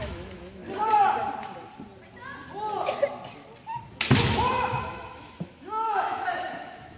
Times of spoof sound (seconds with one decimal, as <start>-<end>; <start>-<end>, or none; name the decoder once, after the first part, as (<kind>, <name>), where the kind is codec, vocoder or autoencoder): 0.0-0.6 (autoencoder, DAC-VAE); 4.8-7.0